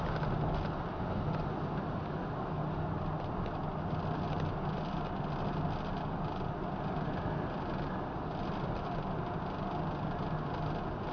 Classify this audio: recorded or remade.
recorded